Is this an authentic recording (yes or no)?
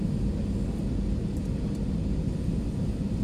yes